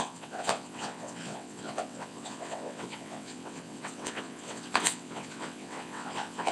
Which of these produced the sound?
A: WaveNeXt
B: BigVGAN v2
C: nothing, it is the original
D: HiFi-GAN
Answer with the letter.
A